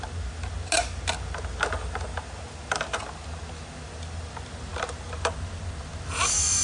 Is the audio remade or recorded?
recorded